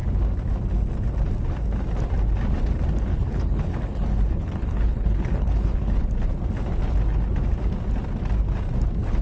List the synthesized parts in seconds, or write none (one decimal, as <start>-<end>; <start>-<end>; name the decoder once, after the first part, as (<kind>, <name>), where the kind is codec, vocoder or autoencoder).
3.1-6.0 (codec, HILCodec)